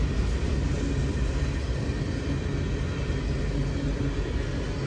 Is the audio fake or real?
real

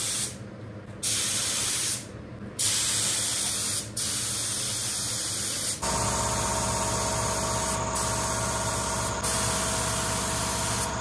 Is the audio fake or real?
real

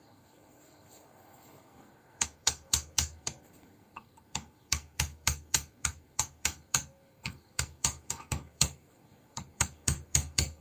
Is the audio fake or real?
fake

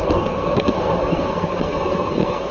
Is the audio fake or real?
fake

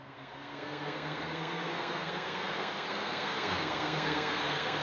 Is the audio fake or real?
fake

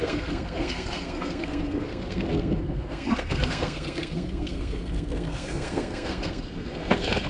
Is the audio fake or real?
fake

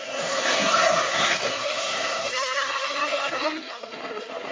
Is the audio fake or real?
fake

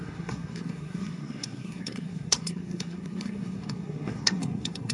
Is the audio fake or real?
fake